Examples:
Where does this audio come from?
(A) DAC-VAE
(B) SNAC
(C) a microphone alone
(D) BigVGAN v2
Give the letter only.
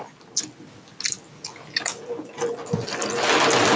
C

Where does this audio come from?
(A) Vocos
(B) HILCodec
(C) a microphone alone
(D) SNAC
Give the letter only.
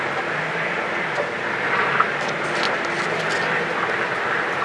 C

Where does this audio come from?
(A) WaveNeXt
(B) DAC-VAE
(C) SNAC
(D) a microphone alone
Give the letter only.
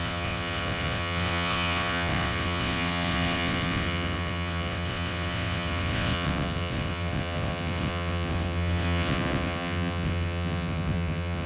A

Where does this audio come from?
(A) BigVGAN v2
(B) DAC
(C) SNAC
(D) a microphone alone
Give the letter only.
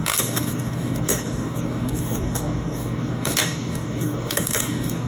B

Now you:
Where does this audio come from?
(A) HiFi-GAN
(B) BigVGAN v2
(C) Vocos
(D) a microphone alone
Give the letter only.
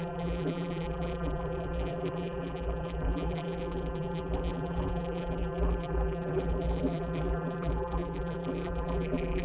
B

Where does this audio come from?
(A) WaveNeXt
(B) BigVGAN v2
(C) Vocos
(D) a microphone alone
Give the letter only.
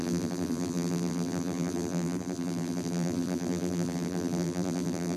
B